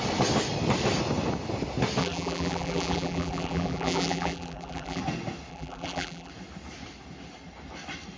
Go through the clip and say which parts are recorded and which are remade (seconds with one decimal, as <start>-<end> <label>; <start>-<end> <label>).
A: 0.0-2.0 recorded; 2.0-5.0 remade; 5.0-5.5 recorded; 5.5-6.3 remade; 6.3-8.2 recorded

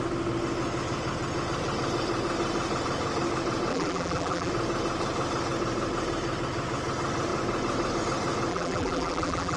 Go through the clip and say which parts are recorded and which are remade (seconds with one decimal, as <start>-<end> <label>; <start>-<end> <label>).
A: 0.0-3.7 recorded; 3.7-4.5 remade; 4.5-8.5 recorded; 8.5-9.6 remade

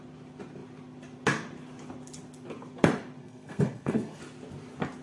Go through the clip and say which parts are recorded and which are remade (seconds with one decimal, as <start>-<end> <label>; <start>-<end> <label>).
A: 0.0-3.2 recorded; 3.2-4.2 remade; 4.2-5.0 recorded

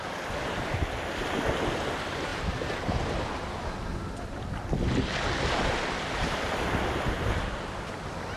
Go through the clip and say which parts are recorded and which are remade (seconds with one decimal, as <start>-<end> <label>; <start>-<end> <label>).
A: 0.0-8.4 recorded